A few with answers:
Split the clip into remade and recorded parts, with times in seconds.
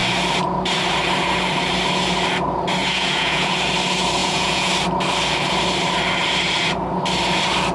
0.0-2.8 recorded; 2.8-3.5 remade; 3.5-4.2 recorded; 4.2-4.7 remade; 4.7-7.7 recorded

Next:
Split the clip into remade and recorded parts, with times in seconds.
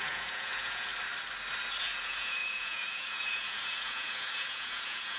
0.0-0.9 remade; 0.9-1.8 recorded; 1.8-5.2 remade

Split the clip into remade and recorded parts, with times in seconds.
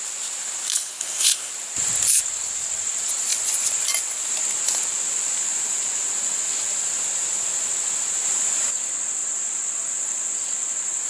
0.0-0.7 recorded; 0.7-1.5 remade; 1.5-11.1 recorded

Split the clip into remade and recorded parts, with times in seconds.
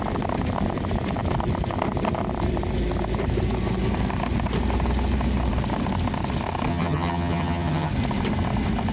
0.0-6.7 recorded; 6.7-7.9 remade; 7.9-8.9 recorded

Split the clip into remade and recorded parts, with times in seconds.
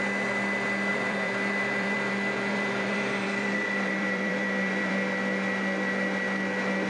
0.0-0.9 recorded; 0.9-2.1 remade; 2.1-2.5 recorded; 2.5-4.9 remade; 4.9-6.9 recorded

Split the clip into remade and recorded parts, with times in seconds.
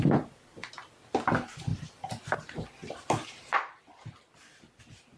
0.0-1.7 recorded; 1.7-4.8 remade; 4.8-5.2 recorded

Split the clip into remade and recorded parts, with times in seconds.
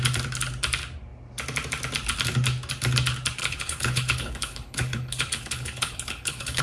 0.0-3.4 recorded; 3.4-6.6 remade